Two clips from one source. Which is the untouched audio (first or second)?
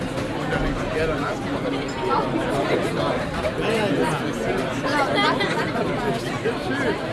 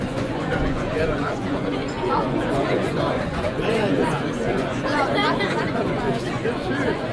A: first